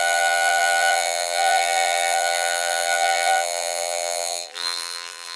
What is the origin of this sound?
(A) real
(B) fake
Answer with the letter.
B